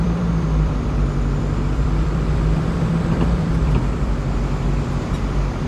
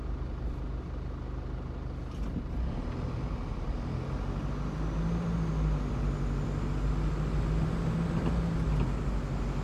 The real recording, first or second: second